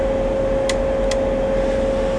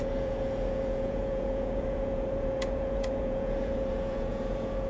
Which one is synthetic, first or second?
second